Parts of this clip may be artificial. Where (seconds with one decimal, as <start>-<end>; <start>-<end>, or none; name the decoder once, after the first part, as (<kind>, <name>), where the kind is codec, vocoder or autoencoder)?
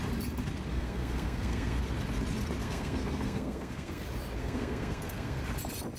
0.7-1.8 (codec, SNAC); 2.6-4.0; 4.4-5.4